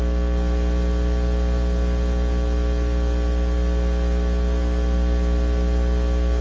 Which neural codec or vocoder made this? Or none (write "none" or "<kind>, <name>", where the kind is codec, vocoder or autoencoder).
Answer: none